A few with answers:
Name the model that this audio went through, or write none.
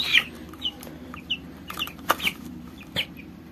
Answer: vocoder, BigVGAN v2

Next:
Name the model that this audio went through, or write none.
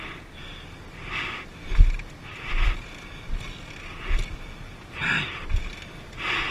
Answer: none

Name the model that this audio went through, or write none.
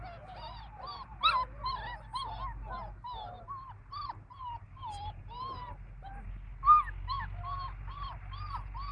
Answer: none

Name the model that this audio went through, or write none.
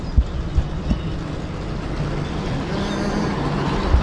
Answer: none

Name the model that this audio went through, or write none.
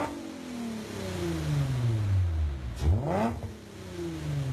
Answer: none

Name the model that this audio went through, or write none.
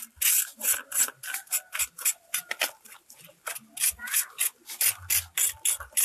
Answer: none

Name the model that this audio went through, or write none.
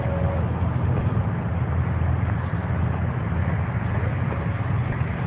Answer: none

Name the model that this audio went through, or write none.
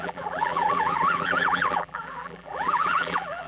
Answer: vocoder, BigVGAN v2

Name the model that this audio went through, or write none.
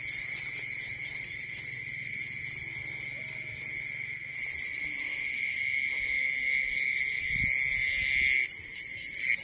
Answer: none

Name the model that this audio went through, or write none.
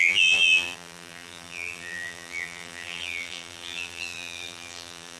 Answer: vocoder, BigVGAN v2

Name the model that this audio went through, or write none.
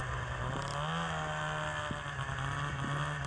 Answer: none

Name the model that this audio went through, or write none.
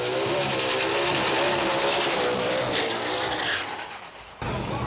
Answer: vocoder, BigVGAN v2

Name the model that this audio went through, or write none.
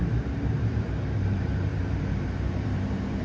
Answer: vocoder, BigVGAN v2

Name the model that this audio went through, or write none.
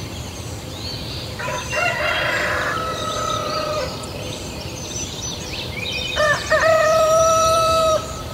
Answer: vocoder, BigVGAN v2